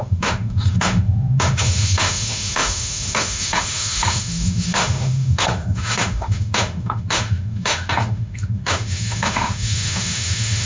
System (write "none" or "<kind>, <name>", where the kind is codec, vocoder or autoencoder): autoencoder, DAC-VAE